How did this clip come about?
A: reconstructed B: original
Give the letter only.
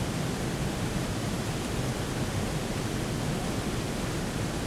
B